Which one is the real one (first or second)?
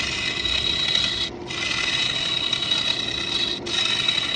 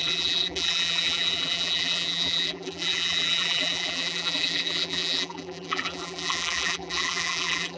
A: first